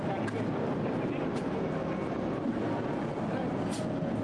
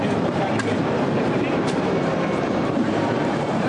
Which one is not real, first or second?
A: second